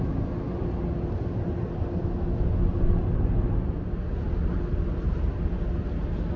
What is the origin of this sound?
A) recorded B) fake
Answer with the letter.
A